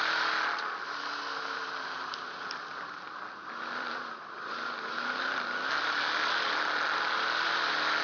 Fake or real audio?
real